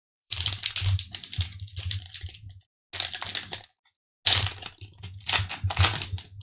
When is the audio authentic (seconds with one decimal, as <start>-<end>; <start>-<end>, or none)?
0.7-6.4